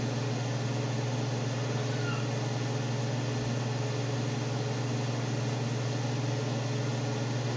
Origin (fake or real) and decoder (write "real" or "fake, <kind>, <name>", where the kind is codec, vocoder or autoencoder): real